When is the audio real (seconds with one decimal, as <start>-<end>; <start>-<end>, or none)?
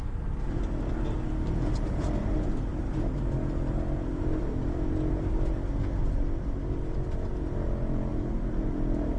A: 0.0-2.7; 3.2-8.1